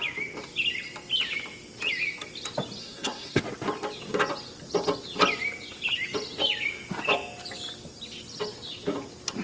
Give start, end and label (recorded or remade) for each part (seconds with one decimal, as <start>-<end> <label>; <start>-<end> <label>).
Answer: 0.0-2.8 recorded; 2.8-3.4 remade; 3.4-9.4 recorded